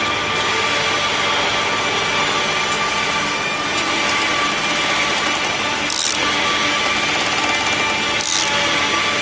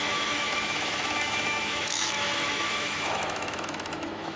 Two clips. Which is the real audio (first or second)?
first